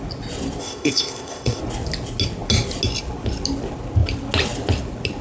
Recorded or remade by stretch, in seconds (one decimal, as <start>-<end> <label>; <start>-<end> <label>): 0.0-0.6 recorded; 0.6-1.6 remade; 1.6-5.2 recorded